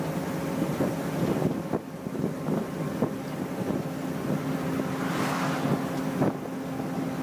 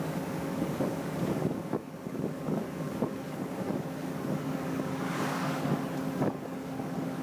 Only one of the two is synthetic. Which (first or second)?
second